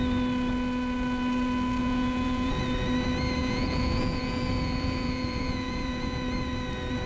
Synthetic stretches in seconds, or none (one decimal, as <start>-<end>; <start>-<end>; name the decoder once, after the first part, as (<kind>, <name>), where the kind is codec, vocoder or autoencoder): 1.8-2.5 (vocoder, Vocos); 3.4-6.2